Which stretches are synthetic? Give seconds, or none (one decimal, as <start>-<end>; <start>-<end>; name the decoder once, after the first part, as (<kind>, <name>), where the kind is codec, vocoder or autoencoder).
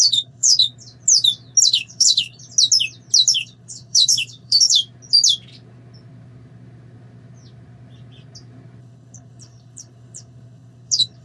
0.0-0.7 (codec, HILCodec); 1.7-2.4; 3.3-4.8; 8.8-11.2